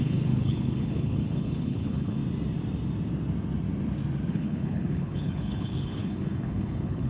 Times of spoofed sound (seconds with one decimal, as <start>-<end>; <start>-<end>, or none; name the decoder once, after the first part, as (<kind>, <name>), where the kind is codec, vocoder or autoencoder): 0.0-2.2 (codec, HILCodec); 4.3-7.1